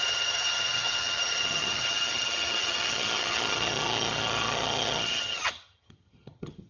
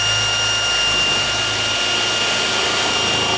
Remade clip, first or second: first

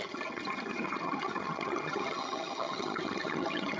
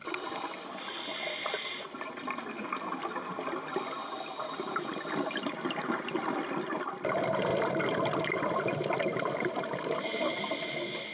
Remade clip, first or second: first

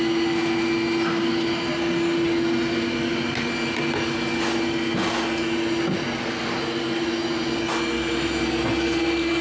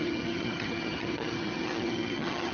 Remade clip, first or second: second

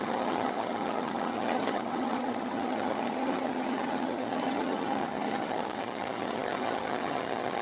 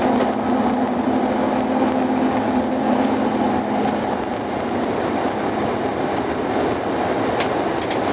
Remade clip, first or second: first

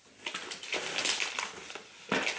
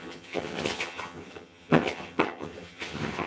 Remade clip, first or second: second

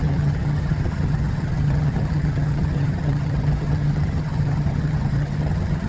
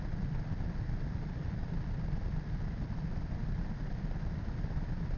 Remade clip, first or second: first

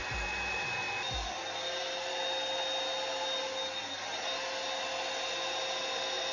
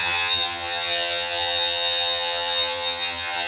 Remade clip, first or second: second